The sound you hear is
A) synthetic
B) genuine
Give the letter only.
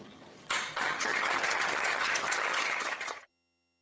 A